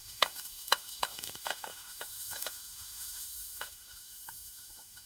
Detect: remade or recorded remade